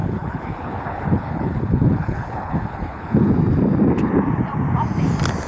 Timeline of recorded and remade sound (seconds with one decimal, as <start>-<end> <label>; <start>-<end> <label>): 0.0-3.3 remade; 3.3-5.5 recorded